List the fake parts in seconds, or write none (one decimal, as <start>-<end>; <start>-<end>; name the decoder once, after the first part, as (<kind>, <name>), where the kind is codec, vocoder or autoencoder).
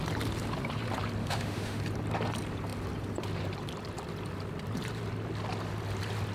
1.2-1.8 (autoencoder, DAC-VAE)